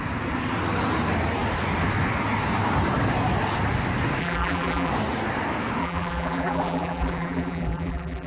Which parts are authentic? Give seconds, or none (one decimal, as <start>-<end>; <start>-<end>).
0.0-4.2; 4.9-5.8